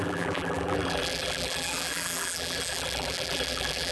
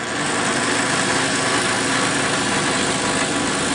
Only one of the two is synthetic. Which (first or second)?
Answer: first